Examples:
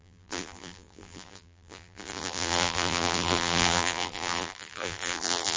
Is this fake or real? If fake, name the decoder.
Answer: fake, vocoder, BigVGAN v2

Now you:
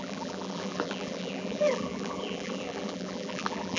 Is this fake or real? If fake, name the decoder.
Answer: fake, vocoder, BigVGAN v2